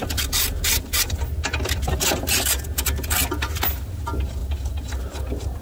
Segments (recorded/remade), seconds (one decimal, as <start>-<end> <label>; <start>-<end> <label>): 0.0-5.6 recorded